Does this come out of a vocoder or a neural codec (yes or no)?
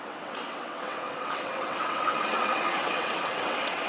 yes